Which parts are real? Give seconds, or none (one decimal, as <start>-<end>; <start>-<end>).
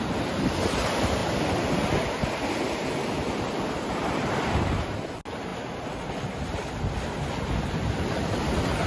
0.0-8.9